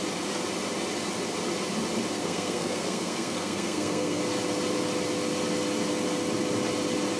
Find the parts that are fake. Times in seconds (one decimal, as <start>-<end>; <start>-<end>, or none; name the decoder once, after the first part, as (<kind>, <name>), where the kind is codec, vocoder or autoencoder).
2.1-4.2 (codec, SNAC)